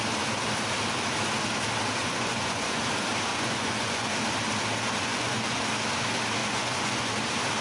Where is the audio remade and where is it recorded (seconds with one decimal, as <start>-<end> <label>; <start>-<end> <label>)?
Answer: 0.0-2.0 recorded; 2.0-2.8 remade; 2.8-3.3 recorded; 3.3-4.1 remade; 4.1-5.0 recorded; 5.0-5.6 remade; 5.6-6.4 recorded; 6.4-7.1 remade; 7.1-7.6 recorded